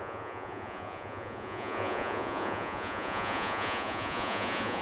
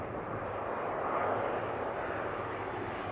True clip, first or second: second